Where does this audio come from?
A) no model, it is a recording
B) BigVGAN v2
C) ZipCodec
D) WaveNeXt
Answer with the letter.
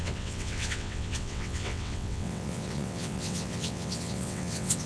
D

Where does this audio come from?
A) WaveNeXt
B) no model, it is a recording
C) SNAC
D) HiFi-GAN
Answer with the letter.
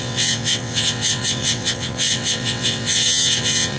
A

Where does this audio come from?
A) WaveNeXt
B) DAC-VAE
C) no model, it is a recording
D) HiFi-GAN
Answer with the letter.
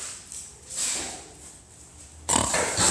C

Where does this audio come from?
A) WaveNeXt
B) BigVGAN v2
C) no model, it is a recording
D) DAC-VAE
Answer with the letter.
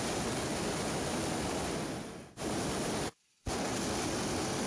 C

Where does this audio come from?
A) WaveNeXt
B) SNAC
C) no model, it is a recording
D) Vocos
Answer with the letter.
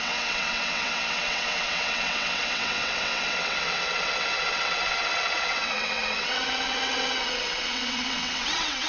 A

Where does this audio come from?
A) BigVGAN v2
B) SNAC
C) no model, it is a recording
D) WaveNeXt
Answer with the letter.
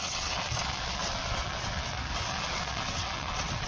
D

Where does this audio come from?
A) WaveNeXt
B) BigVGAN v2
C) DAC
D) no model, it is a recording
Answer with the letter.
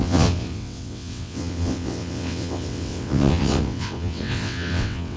A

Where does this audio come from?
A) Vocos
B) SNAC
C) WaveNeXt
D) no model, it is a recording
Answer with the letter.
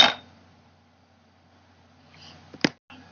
D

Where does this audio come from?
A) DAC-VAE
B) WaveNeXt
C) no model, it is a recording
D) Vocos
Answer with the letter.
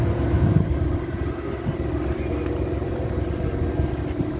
C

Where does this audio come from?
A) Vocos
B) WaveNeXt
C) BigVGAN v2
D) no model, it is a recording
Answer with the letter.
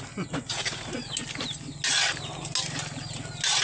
D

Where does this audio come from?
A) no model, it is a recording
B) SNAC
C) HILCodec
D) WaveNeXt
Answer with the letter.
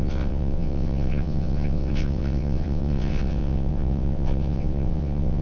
D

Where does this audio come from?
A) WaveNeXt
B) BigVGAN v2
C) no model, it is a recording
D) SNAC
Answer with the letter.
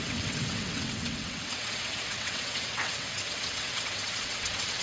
A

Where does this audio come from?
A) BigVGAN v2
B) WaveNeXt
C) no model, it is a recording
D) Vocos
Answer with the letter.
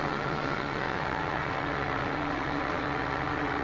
B